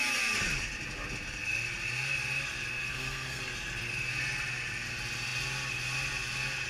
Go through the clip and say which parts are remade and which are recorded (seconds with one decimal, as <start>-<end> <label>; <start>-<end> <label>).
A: 0.0-2.8 recorded; 2.8-3.4 remade; 3.4-6.7 recorded